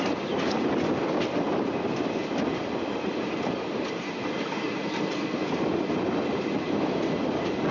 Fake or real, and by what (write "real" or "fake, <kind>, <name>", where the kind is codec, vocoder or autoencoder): real